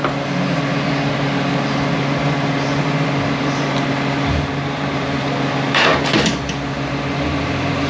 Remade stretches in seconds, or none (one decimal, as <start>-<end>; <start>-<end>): 3.4-5.9; 7.4-7.9